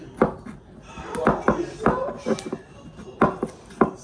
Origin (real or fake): real